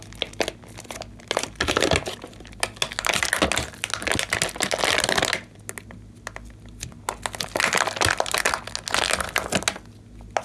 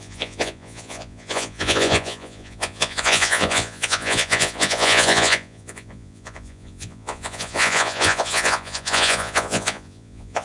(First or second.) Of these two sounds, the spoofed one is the second